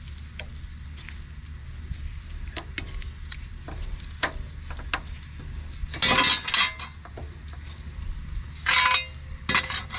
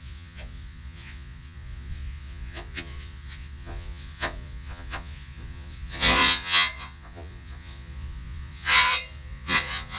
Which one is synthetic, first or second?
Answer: second